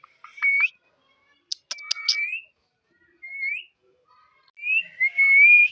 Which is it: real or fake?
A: real